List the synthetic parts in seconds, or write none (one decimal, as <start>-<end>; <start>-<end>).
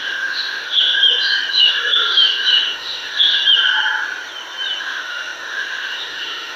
0.0-1.0; 1.5-3.4; 4.8-6.6